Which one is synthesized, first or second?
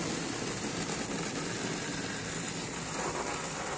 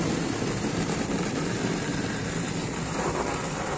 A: second